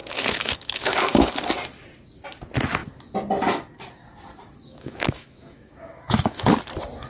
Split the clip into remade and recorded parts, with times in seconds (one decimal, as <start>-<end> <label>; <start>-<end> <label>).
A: 0.0-1.3 remade; 1.3-4.6 recorded; 4.6-6.5 remade; 6.5-7.1 recorded